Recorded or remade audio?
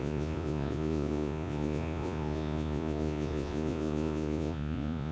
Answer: remade